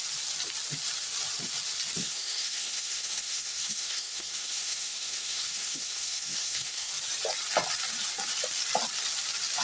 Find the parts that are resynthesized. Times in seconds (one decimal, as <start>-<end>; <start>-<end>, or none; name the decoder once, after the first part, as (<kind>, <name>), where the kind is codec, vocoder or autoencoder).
2.0-6.9 (codec, SNAC)